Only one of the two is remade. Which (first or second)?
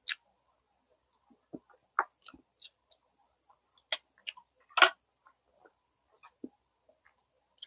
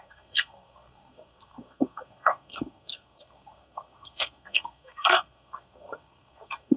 second